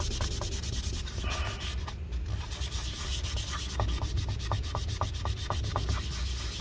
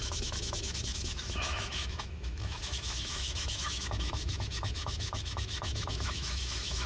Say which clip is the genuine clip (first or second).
first